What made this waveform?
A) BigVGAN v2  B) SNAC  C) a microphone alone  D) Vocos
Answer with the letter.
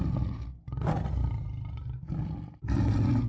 C